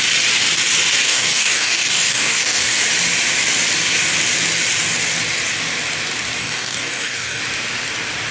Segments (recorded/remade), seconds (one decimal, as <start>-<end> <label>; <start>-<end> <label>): 0.0-1.0 recorded; 1.0-2.8 remade; 2.8-6.4 recorded; 6.4-7.4 remade; 7.4-8.3 recorded